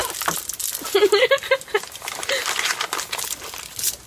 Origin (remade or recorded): recorded